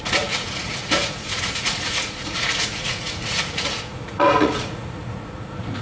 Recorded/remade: remade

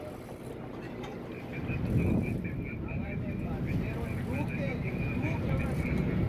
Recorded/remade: recorded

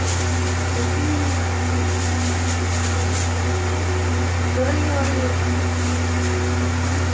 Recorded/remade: recorded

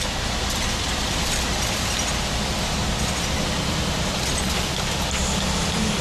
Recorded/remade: remade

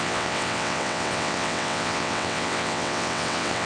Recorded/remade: remade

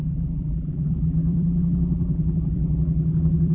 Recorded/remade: remade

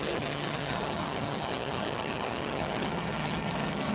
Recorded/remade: remade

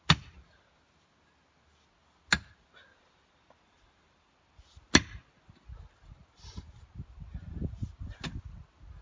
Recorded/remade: recorded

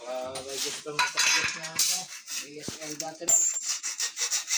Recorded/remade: remade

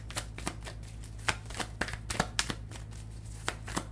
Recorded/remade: recorded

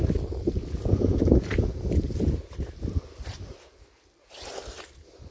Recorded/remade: recorded